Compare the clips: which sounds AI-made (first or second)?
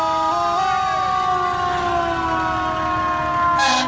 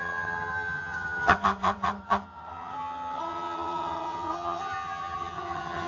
second